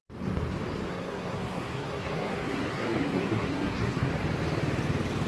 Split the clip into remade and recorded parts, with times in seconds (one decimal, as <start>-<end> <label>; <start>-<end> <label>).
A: 0.0-0.9 recorded; 0.9-4.1 remade; 4.1-5.3 recorded